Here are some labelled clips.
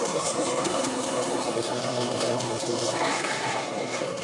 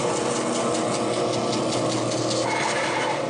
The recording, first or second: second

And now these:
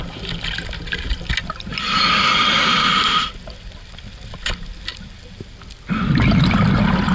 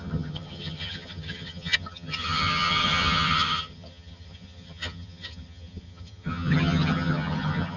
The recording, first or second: first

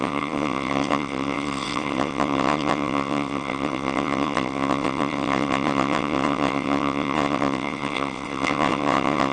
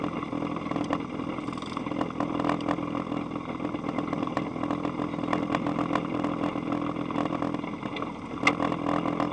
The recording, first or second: second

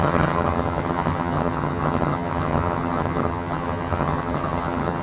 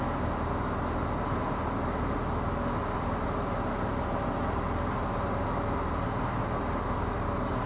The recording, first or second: second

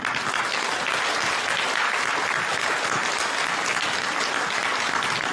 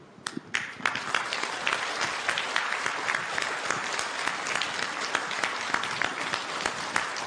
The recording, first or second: first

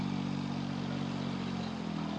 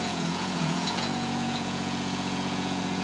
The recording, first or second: first